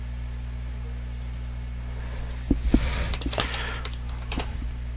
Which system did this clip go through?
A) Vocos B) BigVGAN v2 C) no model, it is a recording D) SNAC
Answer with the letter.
C